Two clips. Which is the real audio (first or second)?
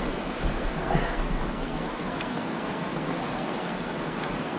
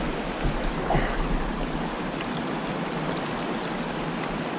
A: second